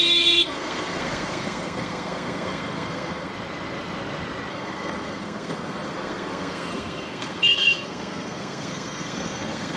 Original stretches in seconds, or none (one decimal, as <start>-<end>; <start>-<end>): 3.3-4.5

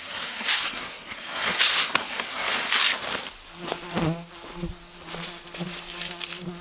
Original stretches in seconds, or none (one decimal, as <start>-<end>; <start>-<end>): 2.5-6.6

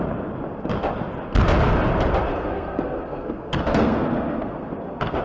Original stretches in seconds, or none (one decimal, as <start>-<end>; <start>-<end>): 0.0-2.3

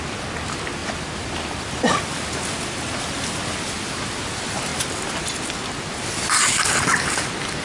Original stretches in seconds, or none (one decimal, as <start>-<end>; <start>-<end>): 0.0-7.6